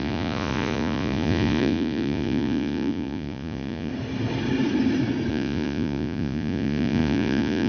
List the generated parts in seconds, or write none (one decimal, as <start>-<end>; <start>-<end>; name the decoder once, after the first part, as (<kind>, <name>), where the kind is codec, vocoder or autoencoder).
0.0-3.9 (vocoder, Vocos); 5.3-7.7